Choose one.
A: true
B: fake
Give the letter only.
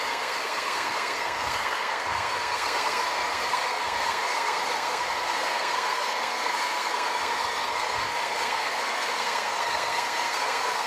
B